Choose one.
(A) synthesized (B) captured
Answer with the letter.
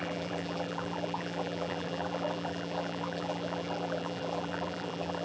A